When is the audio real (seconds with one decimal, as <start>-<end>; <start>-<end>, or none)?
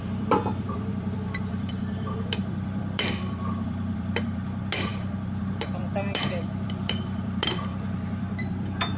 none